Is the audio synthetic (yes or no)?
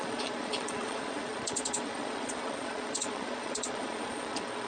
yes